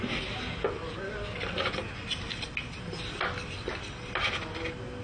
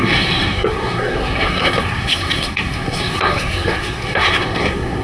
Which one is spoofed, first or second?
second